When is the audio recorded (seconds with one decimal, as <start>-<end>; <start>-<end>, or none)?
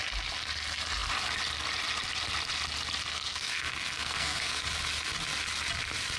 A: 0.0-3.1; 4.6-6.2